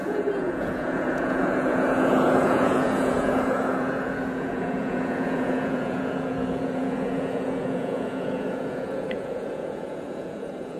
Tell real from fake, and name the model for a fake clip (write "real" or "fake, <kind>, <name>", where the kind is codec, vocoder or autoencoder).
fake, vocoder, Vocos